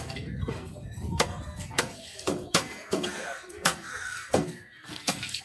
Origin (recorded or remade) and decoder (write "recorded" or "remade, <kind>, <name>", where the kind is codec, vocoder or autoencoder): remade, codec, SNAC